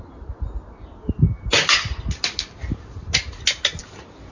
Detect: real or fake real